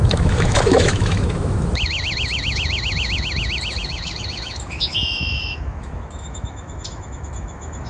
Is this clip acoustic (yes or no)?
no